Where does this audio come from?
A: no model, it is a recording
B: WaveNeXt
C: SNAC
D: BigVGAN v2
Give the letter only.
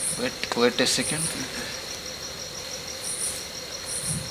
D